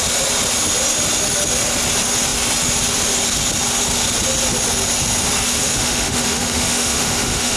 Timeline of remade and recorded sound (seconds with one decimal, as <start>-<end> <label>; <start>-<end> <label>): 0.0-5.5 recorded; 5.5-7.6 remade